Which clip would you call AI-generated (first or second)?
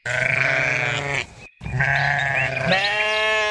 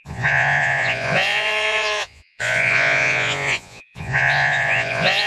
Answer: second